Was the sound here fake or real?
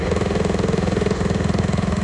fake